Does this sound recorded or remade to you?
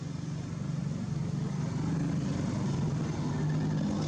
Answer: recorded